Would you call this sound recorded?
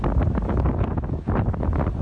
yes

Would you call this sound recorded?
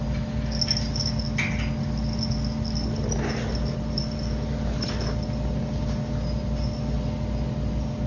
yes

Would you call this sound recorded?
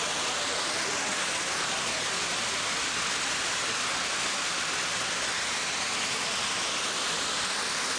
yes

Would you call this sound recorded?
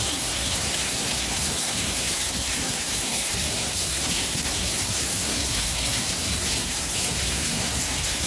no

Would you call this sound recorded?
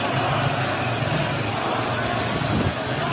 yes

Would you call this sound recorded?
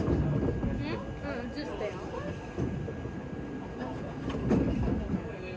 yes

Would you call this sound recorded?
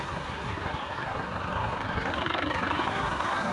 no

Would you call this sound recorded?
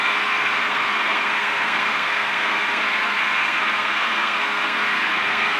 no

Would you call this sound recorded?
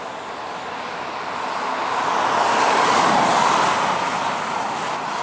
yes